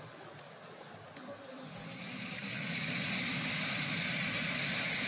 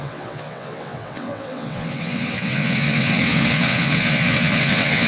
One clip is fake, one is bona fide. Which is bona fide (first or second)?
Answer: first